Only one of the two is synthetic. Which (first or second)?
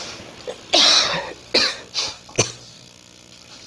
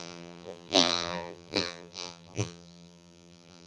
second